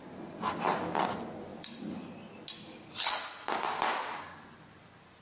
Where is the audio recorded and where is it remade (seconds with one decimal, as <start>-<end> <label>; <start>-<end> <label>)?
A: 0.0-5.2 recorded